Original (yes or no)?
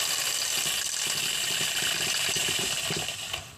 no